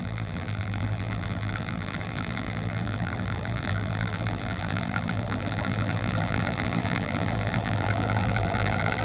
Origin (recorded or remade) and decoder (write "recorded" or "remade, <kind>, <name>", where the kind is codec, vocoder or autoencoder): remade, vocoder, BigVGAN v2